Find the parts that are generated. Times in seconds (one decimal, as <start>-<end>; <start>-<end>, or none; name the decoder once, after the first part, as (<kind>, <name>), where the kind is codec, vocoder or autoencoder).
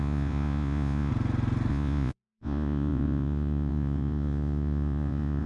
0.0-1.1 (vocoder, Vocos); 1.7-5.5